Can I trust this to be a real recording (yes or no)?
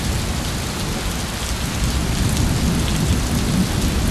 yes